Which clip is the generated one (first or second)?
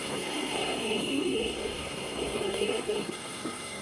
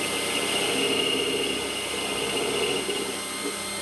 first